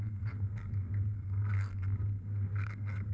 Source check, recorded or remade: remade